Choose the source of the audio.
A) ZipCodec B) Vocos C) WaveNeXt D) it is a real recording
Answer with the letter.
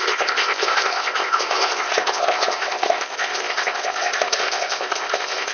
A